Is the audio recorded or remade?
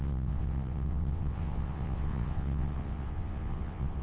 remade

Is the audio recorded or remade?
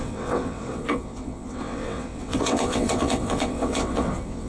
remade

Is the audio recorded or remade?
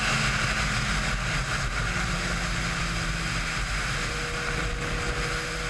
recorded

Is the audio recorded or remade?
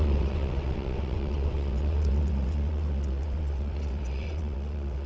remade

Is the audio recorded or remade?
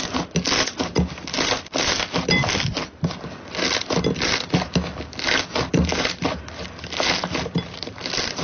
recorded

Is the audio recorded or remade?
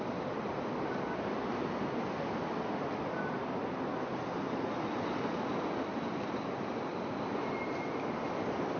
recorded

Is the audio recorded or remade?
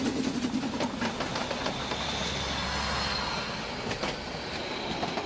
recorded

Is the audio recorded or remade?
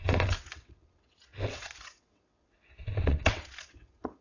remade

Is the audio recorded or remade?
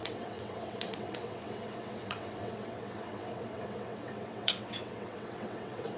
remade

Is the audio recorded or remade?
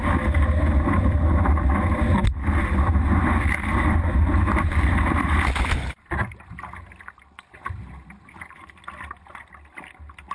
recorded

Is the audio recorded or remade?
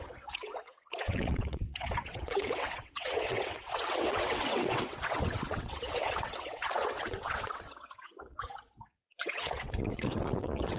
remade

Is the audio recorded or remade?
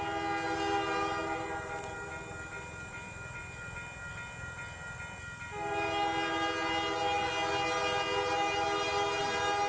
recorded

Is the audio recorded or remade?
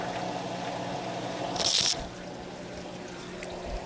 recorded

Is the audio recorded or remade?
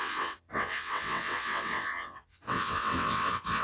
remade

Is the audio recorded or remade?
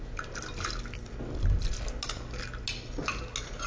recorded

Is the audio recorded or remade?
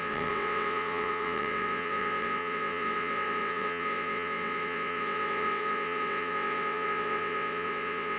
remade